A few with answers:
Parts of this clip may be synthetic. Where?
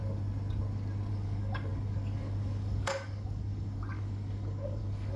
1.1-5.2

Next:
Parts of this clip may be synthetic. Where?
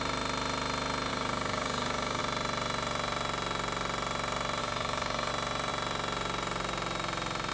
1.1-2.2; 4.6-5.3